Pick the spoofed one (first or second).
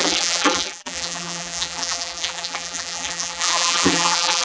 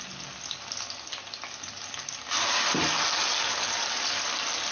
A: first